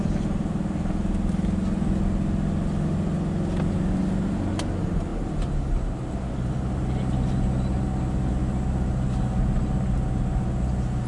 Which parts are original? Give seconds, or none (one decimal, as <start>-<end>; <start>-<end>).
0.0-11.1